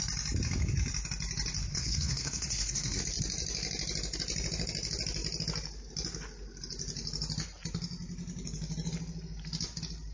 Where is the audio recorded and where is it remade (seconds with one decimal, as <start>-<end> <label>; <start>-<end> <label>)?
0.0-1.7 recorded; 1.7-3.0 remade; 3.0-10.1 recorded